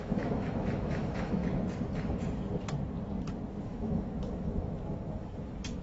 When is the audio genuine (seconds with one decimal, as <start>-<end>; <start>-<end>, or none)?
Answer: 1.4-3.6